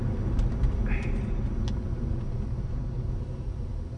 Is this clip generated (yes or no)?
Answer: no